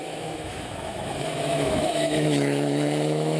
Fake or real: fake